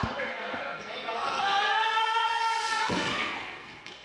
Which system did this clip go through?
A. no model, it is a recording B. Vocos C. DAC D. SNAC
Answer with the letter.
D